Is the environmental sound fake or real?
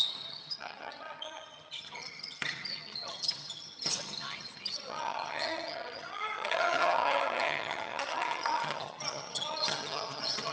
fake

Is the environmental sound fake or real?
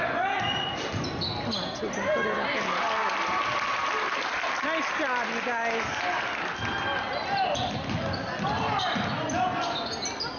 real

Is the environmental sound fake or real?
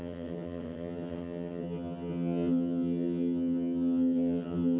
fake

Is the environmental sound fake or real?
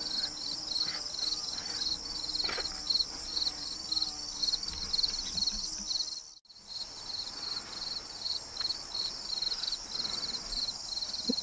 real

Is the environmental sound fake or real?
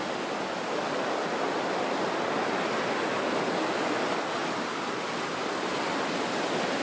real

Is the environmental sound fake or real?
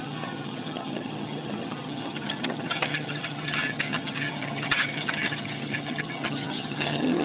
fake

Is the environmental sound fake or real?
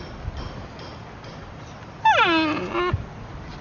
real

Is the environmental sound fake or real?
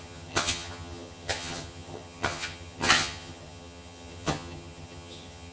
fake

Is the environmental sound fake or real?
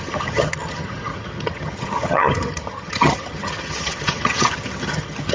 fake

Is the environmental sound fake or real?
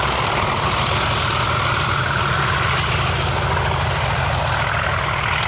real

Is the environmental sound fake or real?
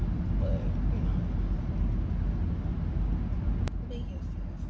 real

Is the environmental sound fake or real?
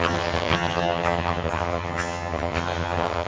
fake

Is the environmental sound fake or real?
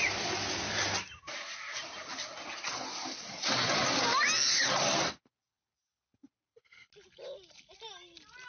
real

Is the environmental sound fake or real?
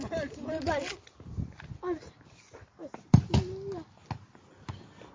real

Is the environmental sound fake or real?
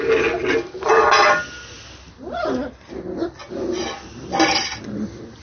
real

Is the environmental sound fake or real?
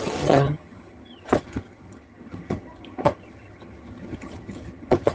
fake